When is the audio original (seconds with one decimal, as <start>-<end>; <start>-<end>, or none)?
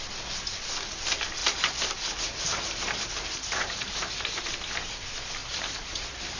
0.0-1.4; 4.4-5.4